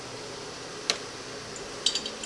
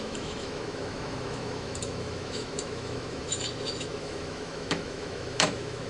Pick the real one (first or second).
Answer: first